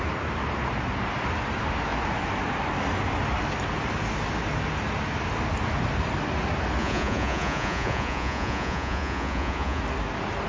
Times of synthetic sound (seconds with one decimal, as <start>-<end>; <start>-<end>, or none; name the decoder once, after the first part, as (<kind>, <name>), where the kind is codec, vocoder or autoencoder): 6.8-9.8 (vocoder, Vocos)